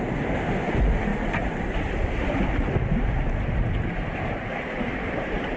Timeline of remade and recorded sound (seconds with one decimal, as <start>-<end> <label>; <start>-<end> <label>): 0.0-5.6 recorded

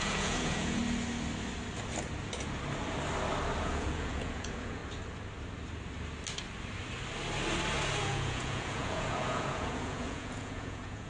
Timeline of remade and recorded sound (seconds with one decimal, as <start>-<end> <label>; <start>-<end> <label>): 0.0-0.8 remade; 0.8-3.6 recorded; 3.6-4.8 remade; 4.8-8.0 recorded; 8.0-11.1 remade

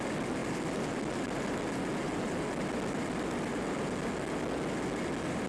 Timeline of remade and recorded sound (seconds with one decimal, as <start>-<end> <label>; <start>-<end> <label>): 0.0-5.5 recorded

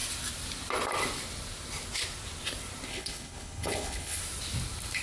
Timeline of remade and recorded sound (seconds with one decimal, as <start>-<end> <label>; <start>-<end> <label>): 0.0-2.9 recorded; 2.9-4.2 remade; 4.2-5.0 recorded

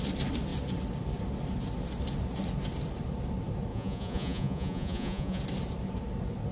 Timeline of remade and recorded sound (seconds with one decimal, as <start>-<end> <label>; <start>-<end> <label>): 0.0-3.7 recorded; 3.7-5.4 remade; 5.4-6.5 recorded

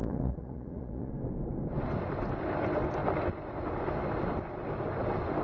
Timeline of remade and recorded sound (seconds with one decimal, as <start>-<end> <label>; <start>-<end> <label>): 0.0-1.1 remade; 1.1-5.4 recorded

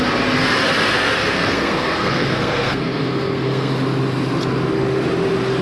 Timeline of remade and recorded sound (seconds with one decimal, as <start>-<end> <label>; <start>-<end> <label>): 0.0-1.2 recorded; 1.2-3.7 remade; 3.7-5.6 recorded